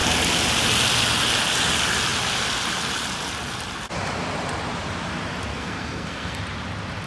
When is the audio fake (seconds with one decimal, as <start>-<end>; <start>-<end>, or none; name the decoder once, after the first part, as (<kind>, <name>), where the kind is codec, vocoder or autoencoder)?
5.5-6.4 (codec, SNAC)